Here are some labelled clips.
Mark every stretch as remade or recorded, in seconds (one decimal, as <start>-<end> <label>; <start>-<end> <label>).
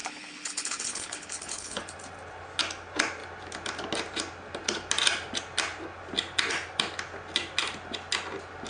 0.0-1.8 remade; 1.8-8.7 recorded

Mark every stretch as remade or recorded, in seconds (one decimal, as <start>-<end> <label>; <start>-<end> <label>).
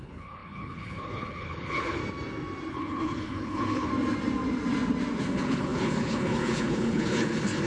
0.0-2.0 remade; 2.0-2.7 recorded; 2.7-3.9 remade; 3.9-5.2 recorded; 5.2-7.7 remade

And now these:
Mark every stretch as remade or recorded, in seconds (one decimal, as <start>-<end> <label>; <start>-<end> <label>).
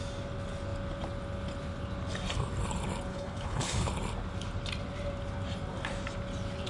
0.0-3.1 recorded; 3.1-3.9 remade; 3.9-6.7 recorded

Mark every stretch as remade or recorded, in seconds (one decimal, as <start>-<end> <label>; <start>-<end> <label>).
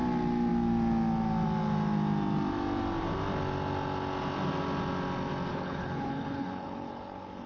0.0-5.5 recorded; 5.5-7.5 remade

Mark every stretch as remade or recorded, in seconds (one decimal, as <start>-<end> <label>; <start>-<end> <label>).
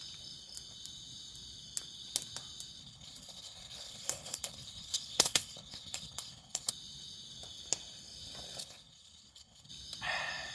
0.0-2.8 recorded; 2.8-6.7 remade; 6.7-8.6 recorded; 8.6-9.7 remade; 9.7-10.5 recorded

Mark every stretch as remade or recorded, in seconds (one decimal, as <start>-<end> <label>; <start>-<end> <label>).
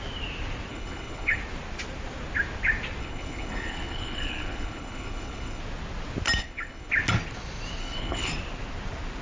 0.0-0.7 recorded; 0.7-1.4 remade; 1.4-3.0 recorded; 3.0-5.6 remade; 5.6-6.4 recorded; 6.4-6.9 remade; 6.9-7.8 recorded; 7.8-8.3 remade; 8.3-9.2 recorded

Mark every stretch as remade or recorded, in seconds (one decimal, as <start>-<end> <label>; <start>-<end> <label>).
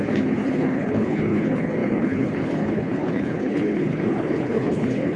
0.0-5.2 remade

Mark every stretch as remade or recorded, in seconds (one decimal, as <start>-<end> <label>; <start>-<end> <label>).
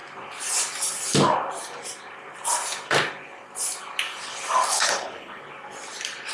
0.0-4.7 recorded; 4.7-5.4 remade; 5.4-6.3 recorded